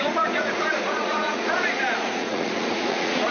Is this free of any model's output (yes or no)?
no